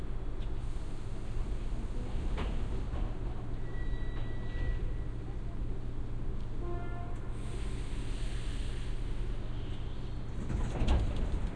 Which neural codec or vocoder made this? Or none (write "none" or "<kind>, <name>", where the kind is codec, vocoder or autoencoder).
none